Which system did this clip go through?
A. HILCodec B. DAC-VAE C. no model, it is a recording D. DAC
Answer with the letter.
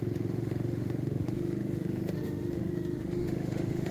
B